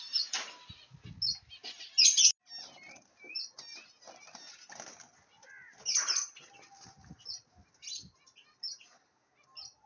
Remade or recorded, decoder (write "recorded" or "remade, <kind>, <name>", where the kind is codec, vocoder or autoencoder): recorded